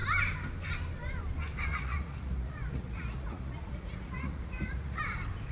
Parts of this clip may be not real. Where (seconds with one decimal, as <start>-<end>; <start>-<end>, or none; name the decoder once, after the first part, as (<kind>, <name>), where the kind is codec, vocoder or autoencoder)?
1.7-5.0 (vocoder, Vocos)